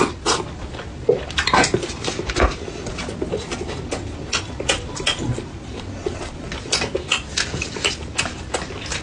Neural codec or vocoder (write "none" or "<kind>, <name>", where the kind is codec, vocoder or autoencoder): none